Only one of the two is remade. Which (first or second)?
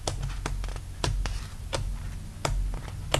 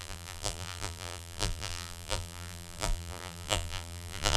second